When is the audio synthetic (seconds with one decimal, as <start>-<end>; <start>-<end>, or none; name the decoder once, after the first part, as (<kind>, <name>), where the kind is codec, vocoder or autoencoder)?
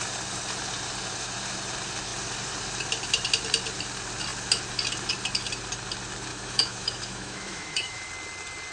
6.3-8.1 (autoencoder, DAC-VAE)